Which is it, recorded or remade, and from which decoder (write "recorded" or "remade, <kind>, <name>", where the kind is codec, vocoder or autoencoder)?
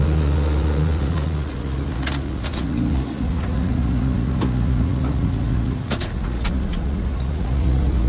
remade, vocoder, Vocos